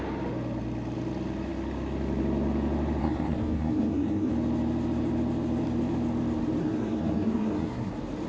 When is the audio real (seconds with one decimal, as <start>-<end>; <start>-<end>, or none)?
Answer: 0.0-3.0; 4.3-6.6; 7.9-8.3